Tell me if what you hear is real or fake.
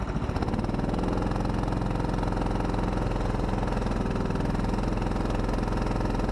real